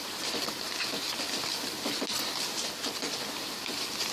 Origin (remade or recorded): recorded